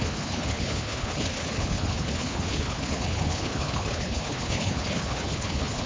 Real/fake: fake